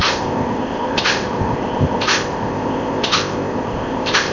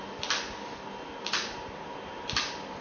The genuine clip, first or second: second